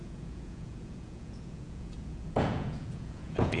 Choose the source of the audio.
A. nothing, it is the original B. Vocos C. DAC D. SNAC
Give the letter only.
B